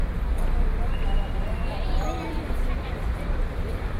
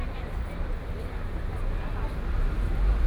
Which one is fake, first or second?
first